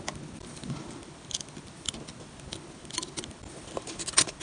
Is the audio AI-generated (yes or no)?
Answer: no